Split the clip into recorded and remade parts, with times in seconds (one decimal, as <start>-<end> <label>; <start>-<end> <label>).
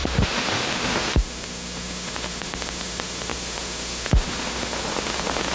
0.0-5.5 remade